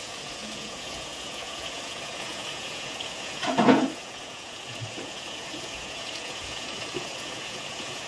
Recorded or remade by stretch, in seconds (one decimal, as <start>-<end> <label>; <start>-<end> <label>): 0.0-8.1 remade